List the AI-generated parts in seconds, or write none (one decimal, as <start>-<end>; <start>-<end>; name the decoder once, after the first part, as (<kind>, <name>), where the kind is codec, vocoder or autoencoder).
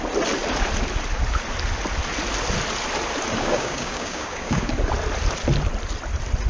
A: 3.4-4.7 (codec, DAC)